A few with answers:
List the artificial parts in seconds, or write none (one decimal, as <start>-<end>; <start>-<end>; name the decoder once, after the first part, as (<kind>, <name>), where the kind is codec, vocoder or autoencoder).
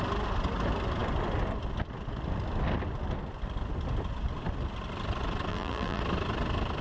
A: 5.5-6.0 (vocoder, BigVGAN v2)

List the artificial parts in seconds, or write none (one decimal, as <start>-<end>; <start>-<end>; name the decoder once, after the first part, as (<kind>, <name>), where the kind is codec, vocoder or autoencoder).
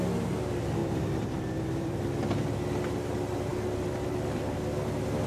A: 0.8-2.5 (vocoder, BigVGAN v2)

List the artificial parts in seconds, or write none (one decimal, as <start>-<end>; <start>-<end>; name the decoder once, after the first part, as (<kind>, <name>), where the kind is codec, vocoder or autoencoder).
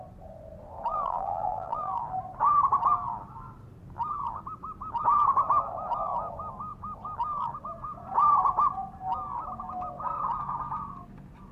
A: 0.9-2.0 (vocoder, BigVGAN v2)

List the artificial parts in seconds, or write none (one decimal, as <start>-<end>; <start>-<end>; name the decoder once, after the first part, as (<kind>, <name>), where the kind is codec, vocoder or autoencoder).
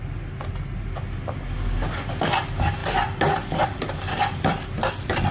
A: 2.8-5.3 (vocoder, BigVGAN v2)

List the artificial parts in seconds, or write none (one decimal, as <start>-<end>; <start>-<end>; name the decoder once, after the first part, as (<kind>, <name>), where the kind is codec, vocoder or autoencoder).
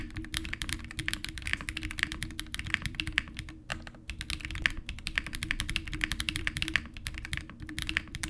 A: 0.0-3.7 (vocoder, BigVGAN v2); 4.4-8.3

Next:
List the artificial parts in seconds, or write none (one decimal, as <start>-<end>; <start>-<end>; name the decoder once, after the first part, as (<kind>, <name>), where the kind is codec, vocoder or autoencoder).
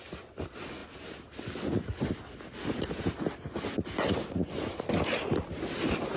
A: none